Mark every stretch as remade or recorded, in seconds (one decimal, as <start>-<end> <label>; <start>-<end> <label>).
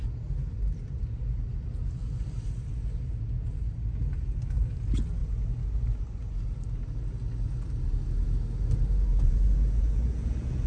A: 0.0-9.1 recorded; 9.1-10.7 remade